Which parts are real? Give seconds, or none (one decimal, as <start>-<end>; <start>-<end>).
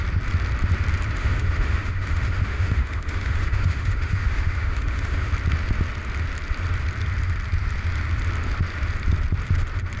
0.0-1.2; 5.3-10.0